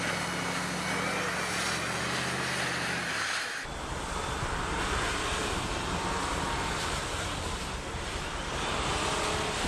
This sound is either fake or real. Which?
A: real